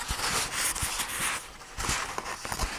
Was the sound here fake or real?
real